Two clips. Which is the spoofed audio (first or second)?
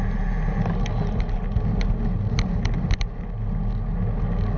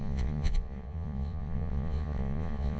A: second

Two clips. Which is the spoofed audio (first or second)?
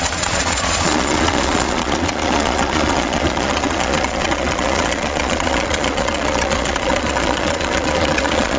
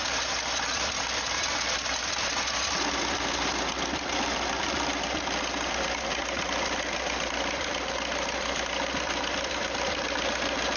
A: first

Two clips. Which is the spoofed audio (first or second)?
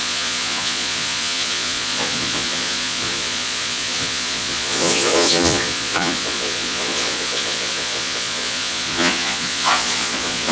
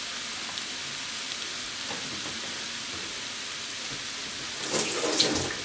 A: first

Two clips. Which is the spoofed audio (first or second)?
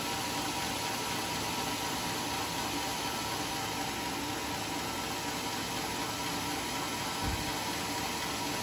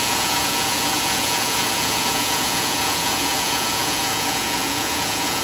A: second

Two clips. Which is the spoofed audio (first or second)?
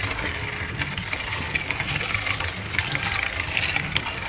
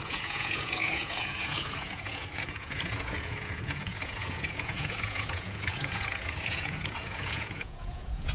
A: second